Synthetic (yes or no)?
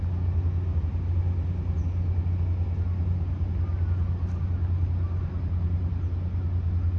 no